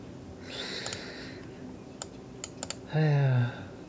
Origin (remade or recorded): recorded